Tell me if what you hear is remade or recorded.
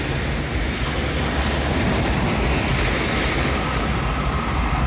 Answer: recorded